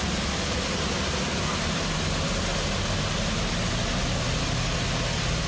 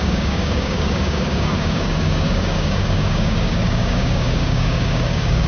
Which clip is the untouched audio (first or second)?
first